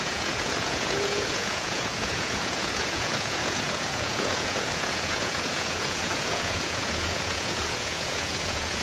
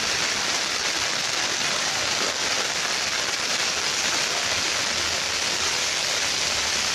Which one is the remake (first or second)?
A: first